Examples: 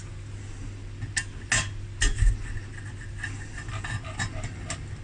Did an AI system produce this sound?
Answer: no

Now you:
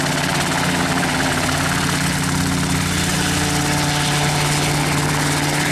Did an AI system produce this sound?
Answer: no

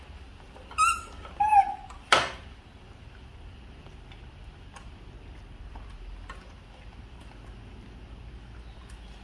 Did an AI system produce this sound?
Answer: yes